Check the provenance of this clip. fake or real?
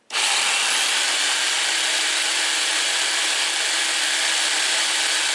fake